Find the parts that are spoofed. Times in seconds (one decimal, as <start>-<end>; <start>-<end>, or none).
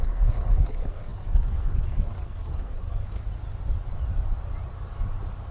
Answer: 0.0-3.2